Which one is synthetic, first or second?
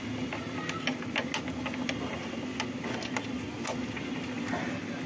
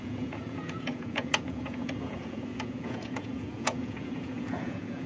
second